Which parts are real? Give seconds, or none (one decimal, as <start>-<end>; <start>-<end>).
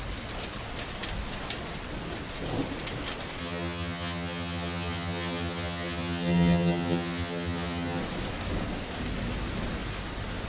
0.0-3.4; 8.0-10.5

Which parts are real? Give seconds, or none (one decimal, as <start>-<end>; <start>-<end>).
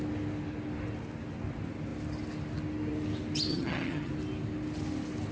0.0-3.5; 4.1-5.3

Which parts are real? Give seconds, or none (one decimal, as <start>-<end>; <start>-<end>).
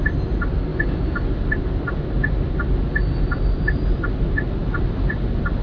0.0-5.6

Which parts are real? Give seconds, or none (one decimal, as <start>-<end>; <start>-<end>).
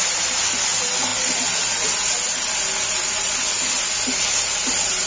0.0-5.1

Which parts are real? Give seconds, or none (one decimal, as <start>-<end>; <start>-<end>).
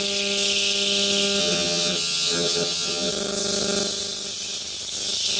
0.0-1.4; 3.1-5.4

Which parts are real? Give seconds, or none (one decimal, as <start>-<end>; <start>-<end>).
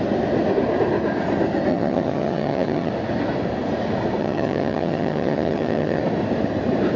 0.0-1.7; 2.9-4.2; 6.0-7.0